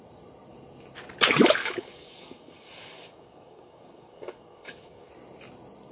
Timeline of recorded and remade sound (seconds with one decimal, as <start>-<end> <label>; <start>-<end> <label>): 0.0-1.6 recorded; 1.6-5.1 remade; 5.1-5.9 recorded